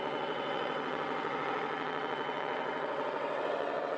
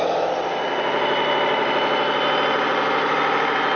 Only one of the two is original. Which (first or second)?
second